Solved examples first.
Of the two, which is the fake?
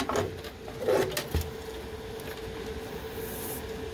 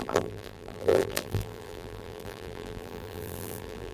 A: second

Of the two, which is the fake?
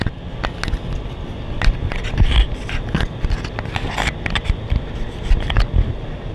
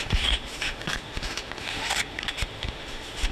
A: second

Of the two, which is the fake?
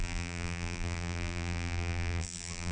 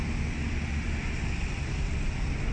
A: first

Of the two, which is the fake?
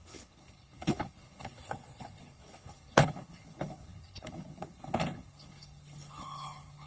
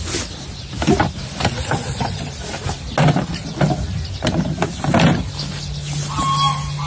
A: first